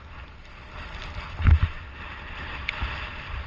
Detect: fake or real real